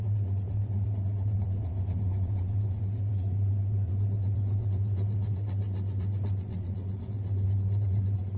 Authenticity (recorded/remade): remade